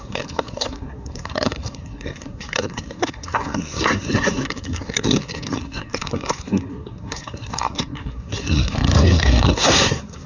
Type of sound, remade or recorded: remade